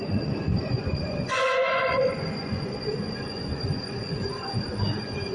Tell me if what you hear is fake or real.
fake